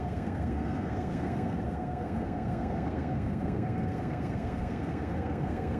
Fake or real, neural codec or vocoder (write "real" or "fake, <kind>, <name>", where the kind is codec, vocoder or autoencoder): fake, codec, SNAC